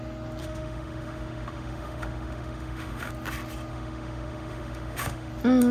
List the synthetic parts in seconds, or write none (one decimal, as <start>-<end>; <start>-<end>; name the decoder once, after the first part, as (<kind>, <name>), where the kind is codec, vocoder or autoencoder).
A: 0.4-3.1 (autoencoder, DAC-VAE); 3.7-5.3